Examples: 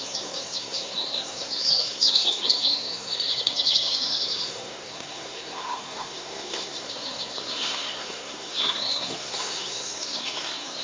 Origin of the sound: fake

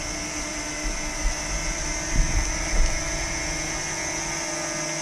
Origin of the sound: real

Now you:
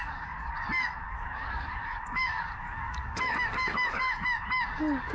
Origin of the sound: fake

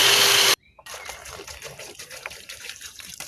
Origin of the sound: fake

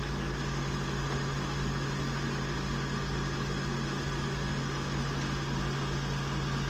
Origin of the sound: real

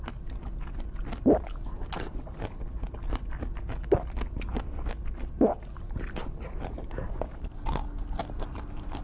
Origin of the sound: real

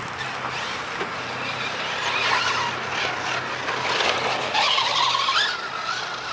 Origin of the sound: real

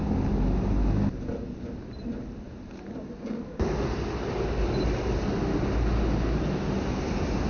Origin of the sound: real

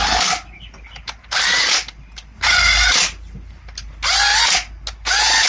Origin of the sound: real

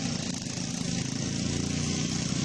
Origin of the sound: real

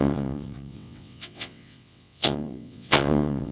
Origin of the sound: fake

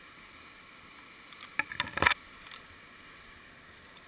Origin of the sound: real